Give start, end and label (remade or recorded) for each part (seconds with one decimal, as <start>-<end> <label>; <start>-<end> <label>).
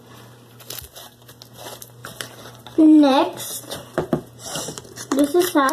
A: 0.0-2.0 recorded; 2.0-5.7 remade